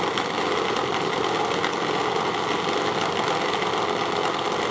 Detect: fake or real real